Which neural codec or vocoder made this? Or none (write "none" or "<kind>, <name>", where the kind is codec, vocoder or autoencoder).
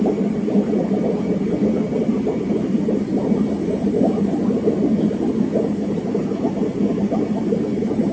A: none